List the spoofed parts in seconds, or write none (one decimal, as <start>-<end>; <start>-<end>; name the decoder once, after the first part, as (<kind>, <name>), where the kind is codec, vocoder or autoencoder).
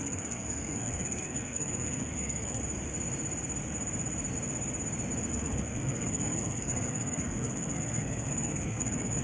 0.0-2.6 (codec, SNAC); 5.3-9.2